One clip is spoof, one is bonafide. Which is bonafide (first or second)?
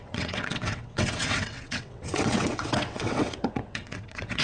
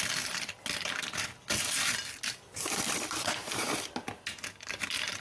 second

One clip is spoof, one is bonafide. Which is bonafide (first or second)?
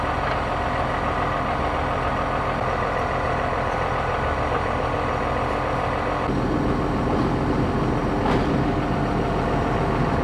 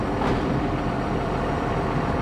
first